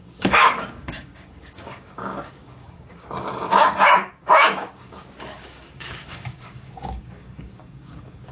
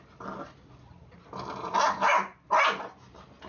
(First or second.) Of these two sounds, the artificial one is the first